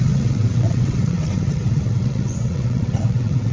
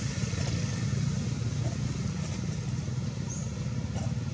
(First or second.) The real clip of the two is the second